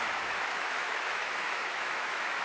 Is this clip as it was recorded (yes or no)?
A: no